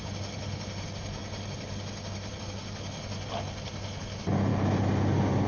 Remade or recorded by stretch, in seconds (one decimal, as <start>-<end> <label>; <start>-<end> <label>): 0.0-5.5 recorded